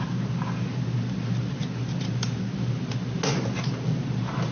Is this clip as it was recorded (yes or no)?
yes